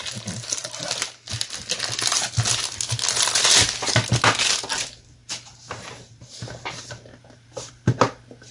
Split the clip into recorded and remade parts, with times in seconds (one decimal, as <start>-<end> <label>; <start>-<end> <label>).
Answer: 0.0-5.2 recorded; 5.2-7.7 remade; 7.7-8.5 recorded